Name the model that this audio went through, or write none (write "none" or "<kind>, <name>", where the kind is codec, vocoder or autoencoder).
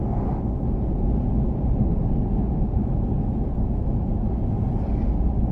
none